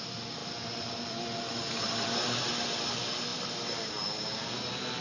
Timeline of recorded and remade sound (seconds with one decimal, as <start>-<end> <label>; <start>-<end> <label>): 0.0-0.4 recorded; 0.4-2.4 remade; 2.4-3.3 recorded; 3.3-4.0 remade; 4.0-5.0 recorded